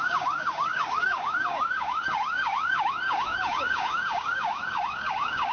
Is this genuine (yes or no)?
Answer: no